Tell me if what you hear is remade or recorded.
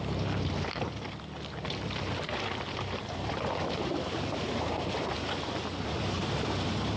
recorded